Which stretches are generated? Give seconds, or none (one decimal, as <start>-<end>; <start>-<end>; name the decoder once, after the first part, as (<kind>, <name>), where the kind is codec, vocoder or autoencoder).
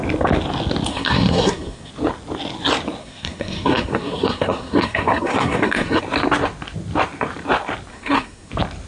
0.9-1.9 (codec, SNAC); 3.0-6.0; 7.9-8.5